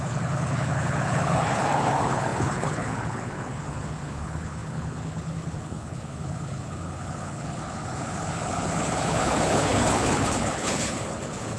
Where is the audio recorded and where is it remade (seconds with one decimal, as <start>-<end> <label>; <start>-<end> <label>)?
0.0-11.6 remade